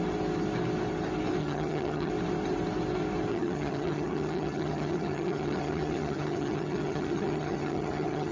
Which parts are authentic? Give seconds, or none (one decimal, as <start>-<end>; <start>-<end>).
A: 0.0-1.4; 2.1-3.3

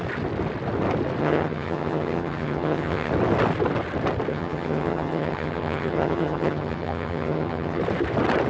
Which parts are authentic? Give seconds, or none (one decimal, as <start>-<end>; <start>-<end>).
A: 0.0-1.2; 3.1-4.3; 7.8-8.5